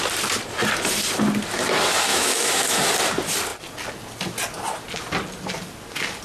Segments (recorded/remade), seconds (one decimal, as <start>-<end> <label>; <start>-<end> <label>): 0.0-2.1 recorded; 2.1-2.8 remade; 2.8-6.2 recorded